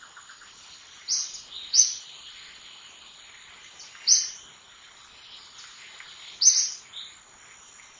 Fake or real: real